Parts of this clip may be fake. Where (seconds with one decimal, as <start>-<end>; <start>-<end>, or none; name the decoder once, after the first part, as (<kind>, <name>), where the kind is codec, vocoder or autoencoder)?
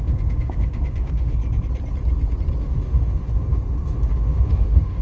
0.0-1.4 (autoencoder, DAC-VAE); 2.6-5.0